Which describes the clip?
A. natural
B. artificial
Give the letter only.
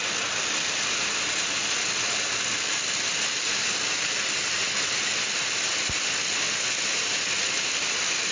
A